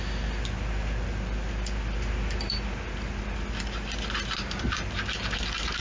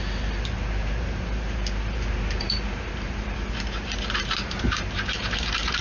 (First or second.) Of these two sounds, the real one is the first